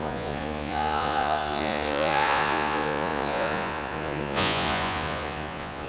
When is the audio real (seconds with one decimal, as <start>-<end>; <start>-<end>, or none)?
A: none